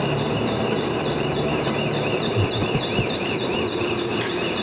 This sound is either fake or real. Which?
fake